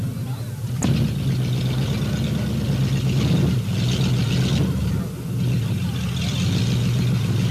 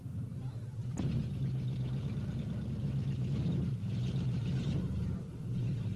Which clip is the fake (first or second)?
second